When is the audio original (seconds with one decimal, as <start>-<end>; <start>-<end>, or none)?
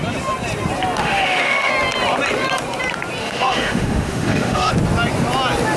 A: 0.0-1.0; 1.7-3.2; 4.7-5.8